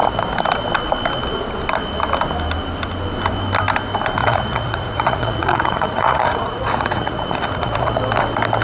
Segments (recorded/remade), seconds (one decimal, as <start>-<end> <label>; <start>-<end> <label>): 0.0-4.2 recorded; 4.2-8.0 remade; 8.0-8.6 recorded